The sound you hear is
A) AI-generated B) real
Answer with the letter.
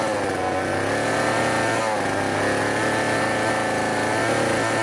B